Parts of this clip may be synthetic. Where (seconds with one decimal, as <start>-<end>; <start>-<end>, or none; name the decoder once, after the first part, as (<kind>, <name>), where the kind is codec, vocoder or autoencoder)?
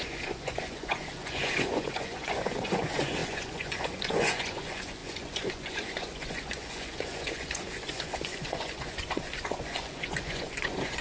0.0-11.0 (vocoder, Vocos)